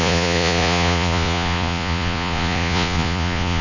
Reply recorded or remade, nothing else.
remade